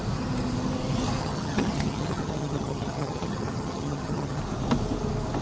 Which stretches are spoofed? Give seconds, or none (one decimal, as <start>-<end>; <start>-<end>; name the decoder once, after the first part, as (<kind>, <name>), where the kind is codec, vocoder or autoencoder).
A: 1.2-4.4 (vocoder, HiFi-GAN)